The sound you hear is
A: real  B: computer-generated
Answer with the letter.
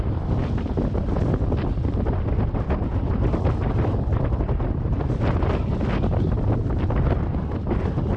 A